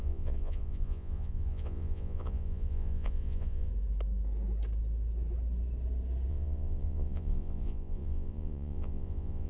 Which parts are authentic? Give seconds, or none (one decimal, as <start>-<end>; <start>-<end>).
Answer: 3.7-6.3